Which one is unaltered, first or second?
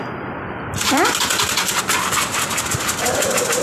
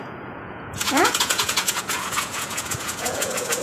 first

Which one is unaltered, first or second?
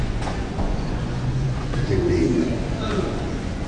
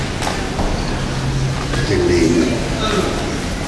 second